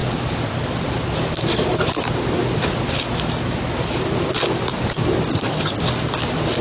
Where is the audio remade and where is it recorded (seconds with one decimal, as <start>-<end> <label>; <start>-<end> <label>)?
0.0-5.3 recorded; 5.3-5.8 remade; 5.8-6.6 recorded